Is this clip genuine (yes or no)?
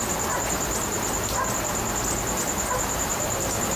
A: yes